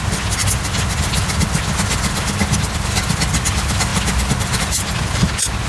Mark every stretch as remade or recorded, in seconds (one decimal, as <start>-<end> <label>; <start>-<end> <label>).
0.0-5.7 recorded